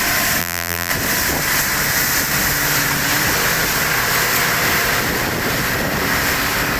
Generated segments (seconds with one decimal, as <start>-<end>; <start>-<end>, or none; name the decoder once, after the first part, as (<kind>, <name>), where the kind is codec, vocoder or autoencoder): 0.4-0.9 (vocoder, BigVGAN v2)

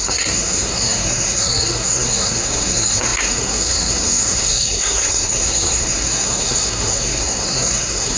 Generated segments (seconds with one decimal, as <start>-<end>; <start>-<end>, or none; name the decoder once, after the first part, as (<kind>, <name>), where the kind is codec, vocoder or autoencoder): 0.0-8.2 (codec, SNAC)

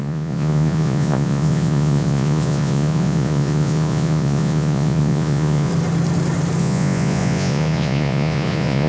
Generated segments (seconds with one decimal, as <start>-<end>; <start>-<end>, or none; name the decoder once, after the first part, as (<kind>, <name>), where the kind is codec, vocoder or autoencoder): 0.0-5.7 (vocoder, Vocos); 6.6-8.9

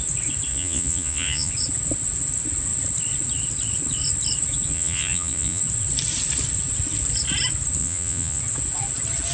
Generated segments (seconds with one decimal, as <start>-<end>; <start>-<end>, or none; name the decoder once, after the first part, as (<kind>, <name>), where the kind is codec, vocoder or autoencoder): 0.5-1.5 (vocoder, Vocos); 4.7-5.6; 7.8-8.4